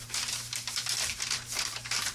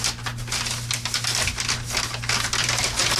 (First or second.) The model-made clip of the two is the first